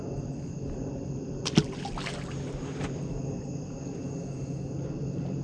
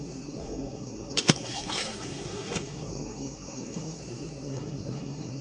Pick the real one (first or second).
first